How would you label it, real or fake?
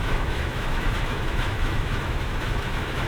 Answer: fake